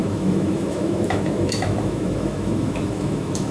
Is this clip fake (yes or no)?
yes